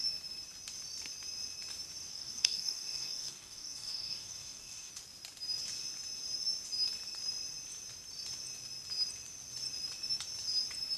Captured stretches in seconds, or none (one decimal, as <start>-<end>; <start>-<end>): 0.0-2.1; 4.9-11.0

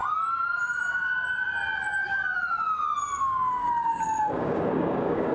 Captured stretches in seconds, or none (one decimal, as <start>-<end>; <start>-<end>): 0.0-3.2

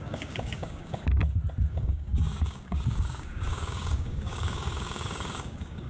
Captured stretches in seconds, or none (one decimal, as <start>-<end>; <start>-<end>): 1.2-1.7

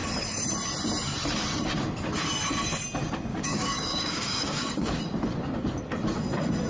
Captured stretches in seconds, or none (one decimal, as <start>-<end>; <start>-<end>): 0.0-3.3; 5.0-6.7